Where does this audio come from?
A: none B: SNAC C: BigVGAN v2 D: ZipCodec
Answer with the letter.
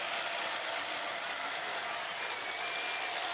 A